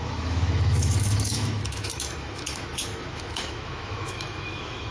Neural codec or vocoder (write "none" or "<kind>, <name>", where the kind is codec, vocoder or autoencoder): autoencoder, DAC-VAE